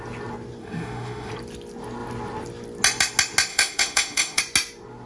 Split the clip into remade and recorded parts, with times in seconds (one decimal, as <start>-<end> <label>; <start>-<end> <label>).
0.0-0.6 recorded; 0.6-1.3 remade; 1.3-3.5 recorded; 3.5-4.4 remade; 4.4-5.1 recorded